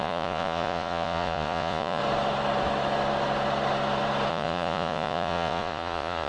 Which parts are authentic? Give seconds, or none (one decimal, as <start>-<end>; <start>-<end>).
2.0-4.3